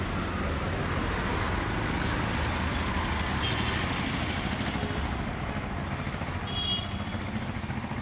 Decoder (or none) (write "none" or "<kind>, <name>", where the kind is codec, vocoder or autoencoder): none